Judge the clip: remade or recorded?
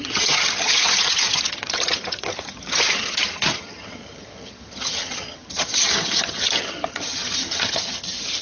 remade